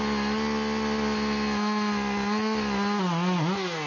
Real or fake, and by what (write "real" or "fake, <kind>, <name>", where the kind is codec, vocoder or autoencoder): real